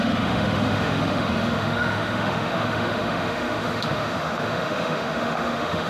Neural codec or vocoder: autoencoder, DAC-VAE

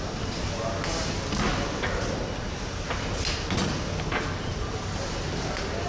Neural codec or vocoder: none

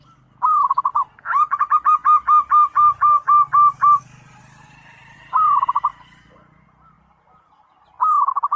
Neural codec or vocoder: none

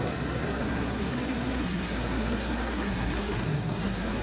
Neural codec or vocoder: codec, SNAC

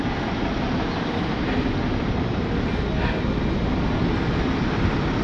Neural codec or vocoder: none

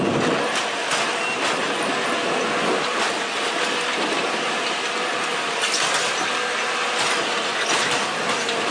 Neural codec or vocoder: none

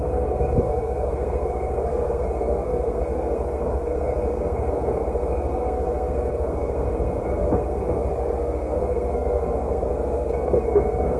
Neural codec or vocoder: codec, SNAC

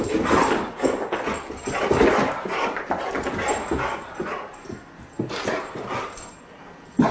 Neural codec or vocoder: none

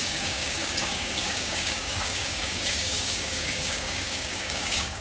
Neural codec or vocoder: codec, DAC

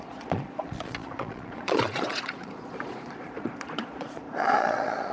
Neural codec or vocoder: vocoder, Vocos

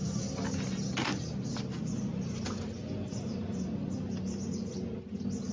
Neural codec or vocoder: none